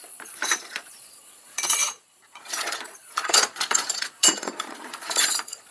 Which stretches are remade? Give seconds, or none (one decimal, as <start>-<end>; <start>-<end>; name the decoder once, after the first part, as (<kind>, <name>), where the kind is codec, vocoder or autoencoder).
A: 0.0-5.7 (vocoder, Vocos)